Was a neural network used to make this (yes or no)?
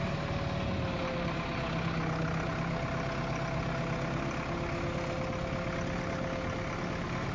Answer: no